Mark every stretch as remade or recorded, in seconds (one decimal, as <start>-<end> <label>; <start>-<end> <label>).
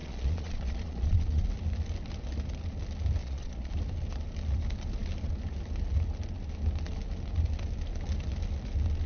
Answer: 0.0-1.4 remade; 1.4-3.2 recorded; 3.2-3.7 remade; 3.7-9.1 recorded